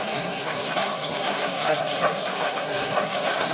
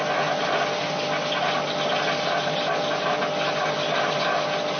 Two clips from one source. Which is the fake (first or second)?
first